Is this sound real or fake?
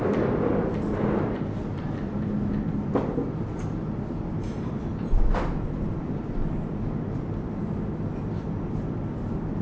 fake